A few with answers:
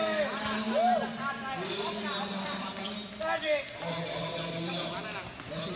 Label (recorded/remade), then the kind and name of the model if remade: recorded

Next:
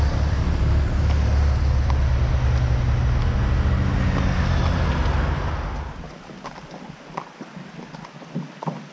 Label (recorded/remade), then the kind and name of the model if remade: recorded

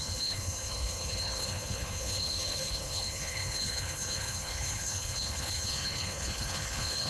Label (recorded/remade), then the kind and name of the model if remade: remade, codec, HILCodec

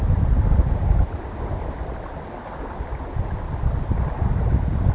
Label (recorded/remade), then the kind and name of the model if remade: recorded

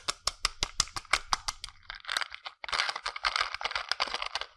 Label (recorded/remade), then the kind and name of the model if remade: recorded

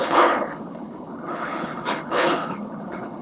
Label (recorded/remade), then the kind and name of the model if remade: remade, codec, HILCodec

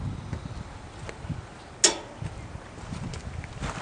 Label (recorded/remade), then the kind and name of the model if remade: recorded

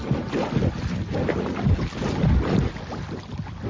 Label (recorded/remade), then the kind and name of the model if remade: recorded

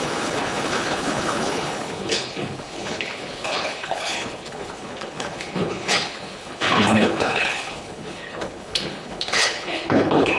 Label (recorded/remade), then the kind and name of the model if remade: remade, codec, HILCodec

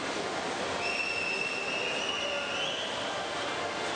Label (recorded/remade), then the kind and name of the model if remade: recorded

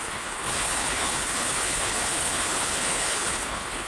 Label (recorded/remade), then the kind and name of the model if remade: remade, codec, HILCodec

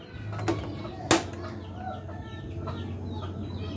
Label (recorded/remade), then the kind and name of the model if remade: recorded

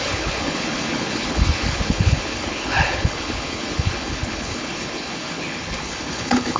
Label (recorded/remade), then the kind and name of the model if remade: remade, codec, HILCodec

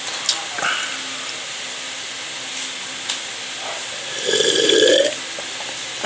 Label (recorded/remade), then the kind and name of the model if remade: recorded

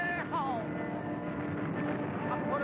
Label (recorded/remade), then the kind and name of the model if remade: recorded